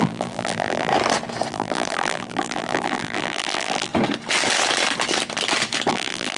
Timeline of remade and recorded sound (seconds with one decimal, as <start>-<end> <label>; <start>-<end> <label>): 0.0-0.9 remade; 0.9-1.5 recorded; 1.5-3.9 remade; 3.9-5.9 recorded; 5.9-6.4 remade